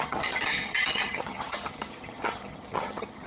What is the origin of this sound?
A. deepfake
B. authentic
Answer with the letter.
A